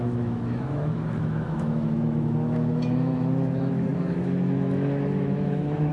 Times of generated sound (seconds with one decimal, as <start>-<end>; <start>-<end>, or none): 0.0-5.9